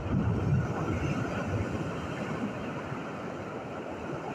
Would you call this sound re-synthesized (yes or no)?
no